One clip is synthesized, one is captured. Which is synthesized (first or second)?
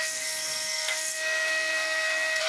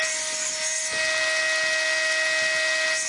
first